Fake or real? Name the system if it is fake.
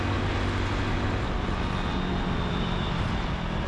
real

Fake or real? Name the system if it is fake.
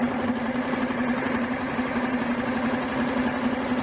real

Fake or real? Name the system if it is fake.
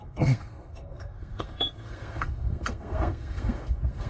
fake, codec, SNAC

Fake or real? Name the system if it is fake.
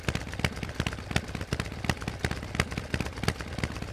real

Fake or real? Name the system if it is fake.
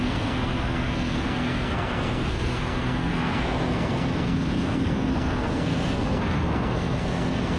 fake, codec, SNAC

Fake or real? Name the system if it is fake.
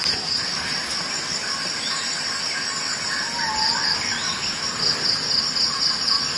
real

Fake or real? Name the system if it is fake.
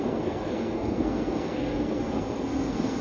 fake, codec, SNAC